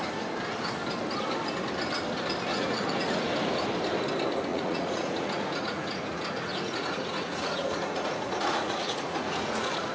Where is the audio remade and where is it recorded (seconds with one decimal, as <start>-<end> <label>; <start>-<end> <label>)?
0.0-2.5 recorded; 2.5-3.2 remade; 3.2-4.5 recorded; 4.5-9.9 remade